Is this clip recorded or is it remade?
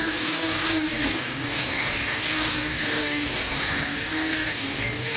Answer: remade